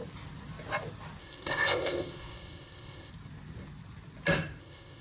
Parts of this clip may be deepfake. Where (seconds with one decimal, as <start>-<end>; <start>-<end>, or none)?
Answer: 1.2-3.1; 4.6-5.0